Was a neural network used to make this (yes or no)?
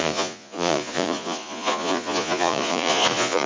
yes